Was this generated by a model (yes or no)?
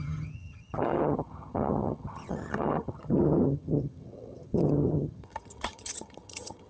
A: yes